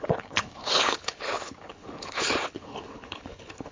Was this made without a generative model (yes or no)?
no